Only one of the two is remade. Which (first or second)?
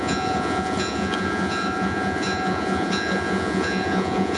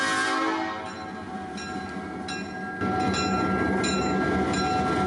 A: first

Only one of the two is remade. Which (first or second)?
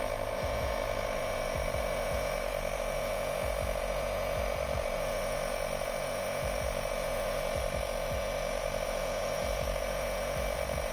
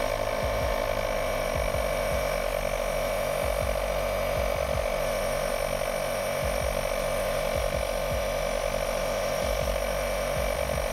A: first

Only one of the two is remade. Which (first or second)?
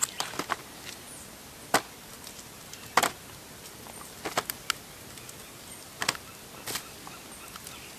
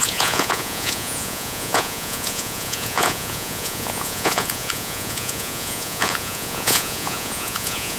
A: second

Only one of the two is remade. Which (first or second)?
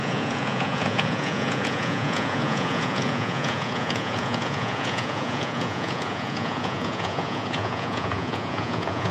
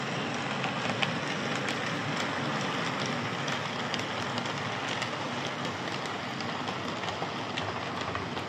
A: first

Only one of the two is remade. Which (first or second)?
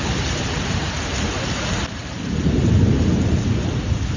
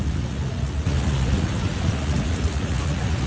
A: second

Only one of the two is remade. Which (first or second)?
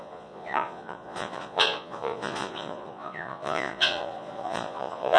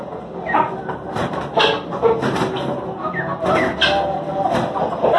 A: first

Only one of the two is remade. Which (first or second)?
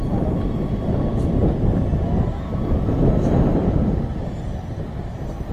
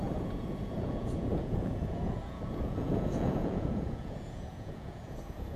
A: second